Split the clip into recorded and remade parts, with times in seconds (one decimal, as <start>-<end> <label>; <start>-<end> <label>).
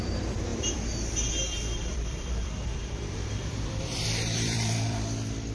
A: 0.0-5.5 remade